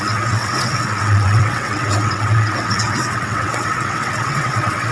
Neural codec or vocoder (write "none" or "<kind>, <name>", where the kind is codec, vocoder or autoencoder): vocoder, WaveNeXt